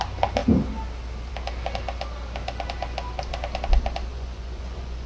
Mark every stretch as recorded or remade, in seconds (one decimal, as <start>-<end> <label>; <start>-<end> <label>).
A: 0.0-4.1 recorded; 4.1-5.1 remade